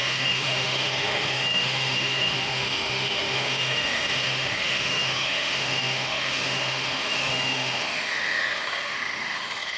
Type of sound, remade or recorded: remade